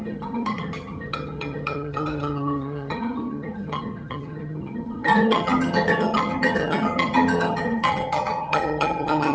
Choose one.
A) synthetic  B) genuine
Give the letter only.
A